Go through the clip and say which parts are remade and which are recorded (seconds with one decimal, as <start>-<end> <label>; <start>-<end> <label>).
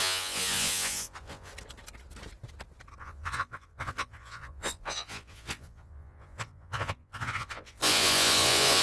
0.0-1.5 remade; 1.5-3.0 recorded; 3.0-8.8 remade